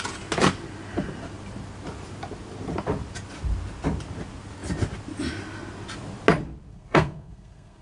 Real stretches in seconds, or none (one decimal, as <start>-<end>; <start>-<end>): 0.0-6.7